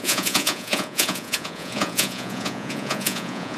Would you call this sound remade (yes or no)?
yes